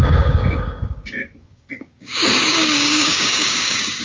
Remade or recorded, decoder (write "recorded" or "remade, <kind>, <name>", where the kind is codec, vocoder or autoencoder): remade, codec, DAC